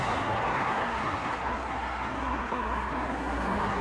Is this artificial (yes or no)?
yes